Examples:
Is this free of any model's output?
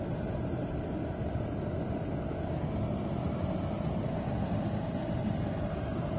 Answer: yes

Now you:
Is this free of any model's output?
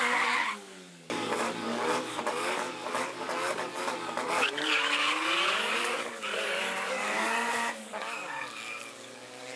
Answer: no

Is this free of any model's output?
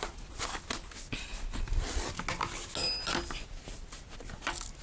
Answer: yes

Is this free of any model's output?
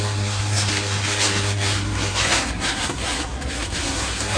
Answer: no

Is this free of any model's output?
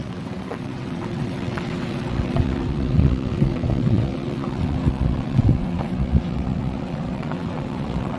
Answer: no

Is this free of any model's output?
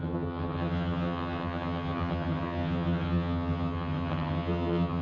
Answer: no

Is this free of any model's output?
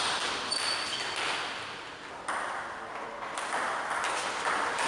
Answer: yes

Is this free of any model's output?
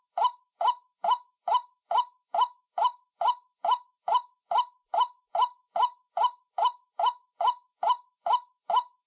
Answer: no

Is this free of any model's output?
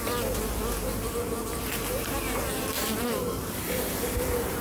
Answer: yes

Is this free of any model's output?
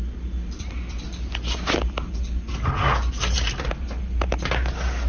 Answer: yes